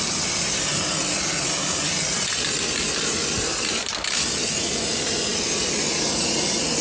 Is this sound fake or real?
real